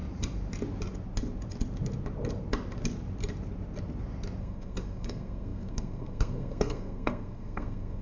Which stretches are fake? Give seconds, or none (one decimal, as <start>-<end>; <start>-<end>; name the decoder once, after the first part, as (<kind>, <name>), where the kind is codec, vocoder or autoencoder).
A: 4.4-8.0 (codec, SNAC)